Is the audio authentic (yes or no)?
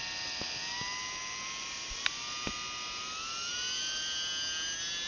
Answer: yes